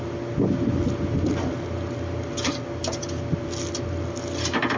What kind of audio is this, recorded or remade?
recorded